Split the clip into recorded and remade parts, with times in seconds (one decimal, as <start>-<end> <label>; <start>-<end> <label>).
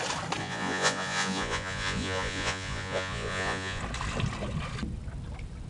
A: 0.0-0.4 recorded; 0.4-3.8 remade; 3.8-5.7 recorded